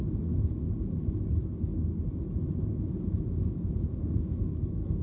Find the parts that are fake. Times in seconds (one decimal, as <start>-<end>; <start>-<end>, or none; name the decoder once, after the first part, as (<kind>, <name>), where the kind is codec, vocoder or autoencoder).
4.0-5.0 (codec, SNAC)